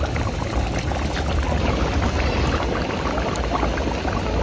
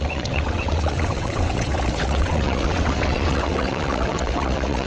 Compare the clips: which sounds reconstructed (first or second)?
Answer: second